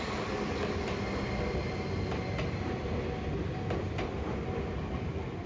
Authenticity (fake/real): real